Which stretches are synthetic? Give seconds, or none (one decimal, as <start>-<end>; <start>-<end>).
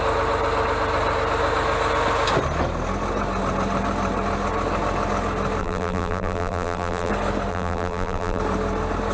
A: 5.6-7.1; 7.5-8.4